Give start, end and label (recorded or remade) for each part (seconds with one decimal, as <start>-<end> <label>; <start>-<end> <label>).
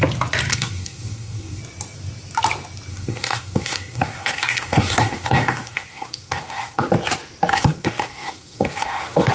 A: 0.0-0.5 recorded; 0.5-1.6 remade; 1.6-2.9 recorded; 2.9-6.9 remade; 6.9-7.5 recorded; 7.5-9.3 remade